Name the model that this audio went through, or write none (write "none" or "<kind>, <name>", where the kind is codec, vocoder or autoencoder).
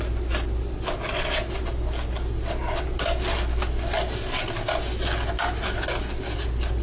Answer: none